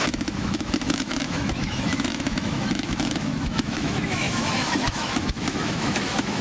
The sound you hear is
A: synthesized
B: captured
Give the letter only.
A